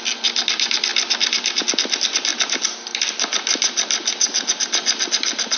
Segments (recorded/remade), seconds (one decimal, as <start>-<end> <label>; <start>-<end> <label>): 0.0-5.6 recorded